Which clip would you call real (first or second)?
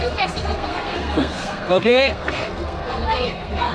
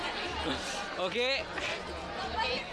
second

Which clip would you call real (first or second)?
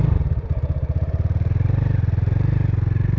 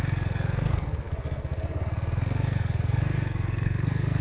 first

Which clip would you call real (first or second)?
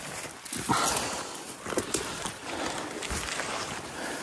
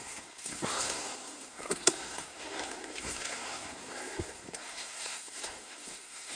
first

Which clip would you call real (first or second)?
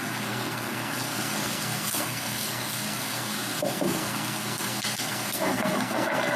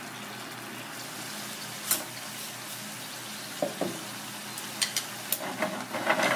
second